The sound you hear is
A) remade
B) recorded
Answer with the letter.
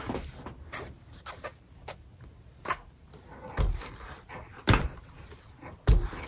B